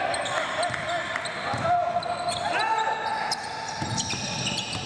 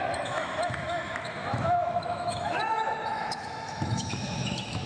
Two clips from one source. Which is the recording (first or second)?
first